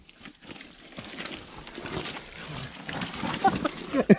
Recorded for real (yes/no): yes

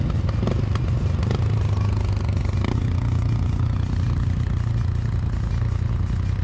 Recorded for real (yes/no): yes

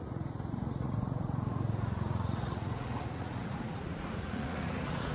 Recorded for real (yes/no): no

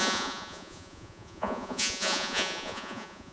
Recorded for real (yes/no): no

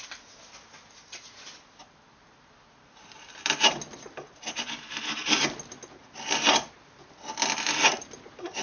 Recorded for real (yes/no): yes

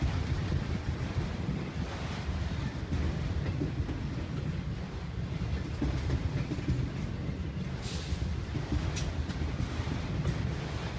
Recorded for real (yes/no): yes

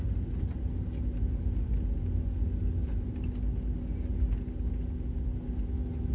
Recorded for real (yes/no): yes